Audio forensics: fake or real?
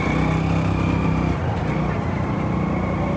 real